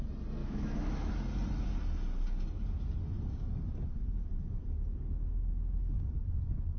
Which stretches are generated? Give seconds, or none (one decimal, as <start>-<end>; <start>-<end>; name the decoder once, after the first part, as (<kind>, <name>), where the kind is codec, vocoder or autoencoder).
0.4-1.1 (autoencoder, DAC-VAE)